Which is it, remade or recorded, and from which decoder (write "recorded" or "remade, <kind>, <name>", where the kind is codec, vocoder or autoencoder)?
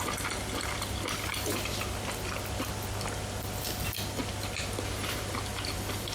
recorded